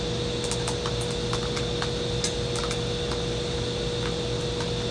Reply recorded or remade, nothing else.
recorded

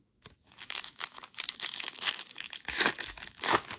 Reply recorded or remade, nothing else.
remade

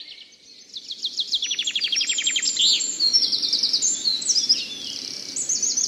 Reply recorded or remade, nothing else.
recorded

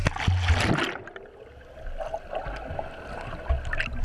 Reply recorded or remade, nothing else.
recorded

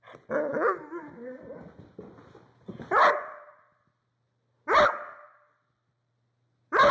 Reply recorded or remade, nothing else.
recorded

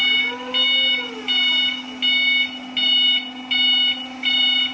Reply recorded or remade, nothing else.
recorded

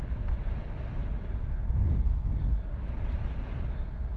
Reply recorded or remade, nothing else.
recorded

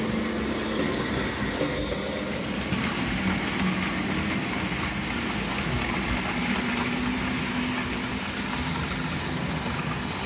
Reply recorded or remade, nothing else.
recorded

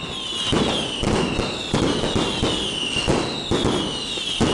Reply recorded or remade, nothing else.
recorded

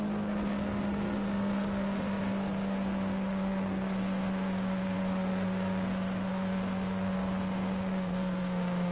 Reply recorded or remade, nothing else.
remade